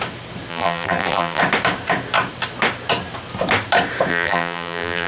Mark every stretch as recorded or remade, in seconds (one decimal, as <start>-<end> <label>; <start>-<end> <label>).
0.0-0.5 recorded; 0.5-1.4 remade; 1.4-4.1 recorded; 4.1-5.1 remade